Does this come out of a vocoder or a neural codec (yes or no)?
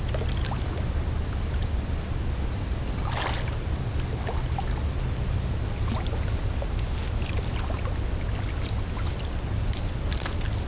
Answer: no